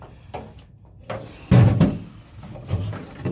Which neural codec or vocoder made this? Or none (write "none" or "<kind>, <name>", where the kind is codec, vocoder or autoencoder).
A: none